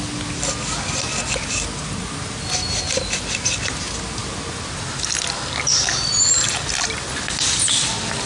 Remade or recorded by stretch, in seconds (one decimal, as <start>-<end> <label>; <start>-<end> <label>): 0.0-8.3 recorded